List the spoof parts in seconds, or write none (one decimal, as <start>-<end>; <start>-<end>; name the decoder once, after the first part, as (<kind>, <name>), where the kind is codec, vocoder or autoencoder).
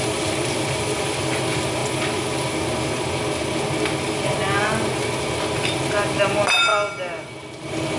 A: none